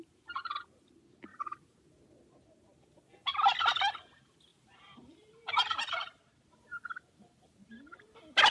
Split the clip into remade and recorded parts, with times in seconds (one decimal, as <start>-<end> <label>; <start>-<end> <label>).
0.0-1.3 recorded; 1.3-1.8 remade; 1.8-4.5 recorded; 4.5-6.3 remade; 6.3-8.5 recorded